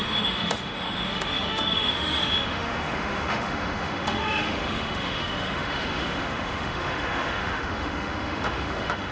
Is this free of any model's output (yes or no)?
no